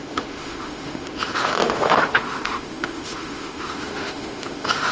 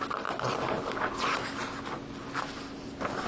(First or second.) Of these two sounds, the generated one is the first